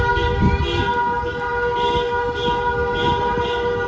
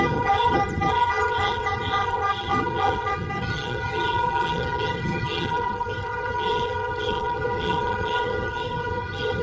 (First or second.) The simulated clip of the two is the second